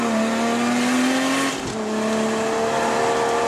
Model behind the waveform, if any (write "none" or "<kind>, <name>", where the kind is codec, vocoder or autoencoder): none